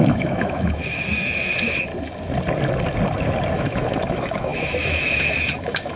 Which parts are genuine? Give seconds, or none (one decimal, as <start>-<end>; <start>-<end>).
1.9-3.5